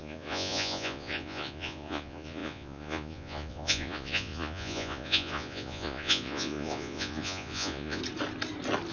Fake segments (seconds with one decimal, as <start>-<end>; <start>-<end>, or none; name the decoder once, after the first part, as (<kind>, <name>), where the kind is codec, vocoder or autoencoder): 0.0-8.0 (vocoder, Vocos)

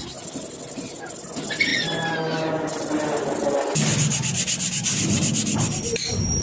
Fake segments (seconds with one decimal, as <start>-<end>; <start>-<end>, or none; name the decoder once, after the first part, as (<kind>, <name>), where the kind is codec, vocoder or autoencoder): none

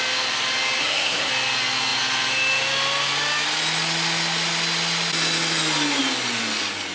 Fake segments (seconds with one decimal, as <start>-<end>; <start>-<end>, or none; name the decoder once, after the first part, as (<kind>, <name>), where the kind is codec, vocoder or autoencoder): 0.8-1.3 (codec, SNAC)

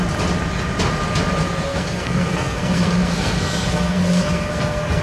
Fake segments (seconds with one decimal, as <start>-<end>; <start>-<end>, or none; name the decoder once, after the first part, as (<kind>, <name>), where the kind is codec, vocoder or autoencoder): 1.7-5.0 (codec, SNAC)

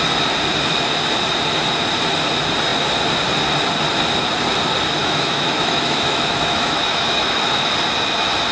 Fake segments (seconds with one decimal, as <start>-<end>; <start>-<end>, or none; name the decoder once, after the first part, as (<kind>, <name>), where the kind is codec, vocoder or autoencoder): 5.0-7.7 (autoencoder, DAC-VAE)

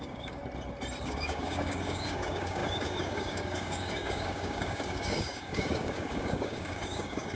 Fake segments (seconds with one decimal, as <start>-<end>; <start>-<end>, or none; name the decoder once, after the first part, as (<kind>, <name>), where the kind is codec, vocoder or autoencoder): 0.0-0.4 (codec, DAC); 1.0-7.4